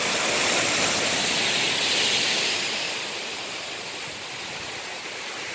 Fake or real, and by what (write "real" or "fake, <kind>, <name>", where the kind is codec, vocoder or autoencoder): real